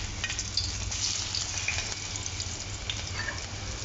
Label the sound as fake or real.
real